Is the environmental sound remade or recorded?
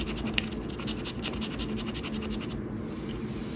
recorded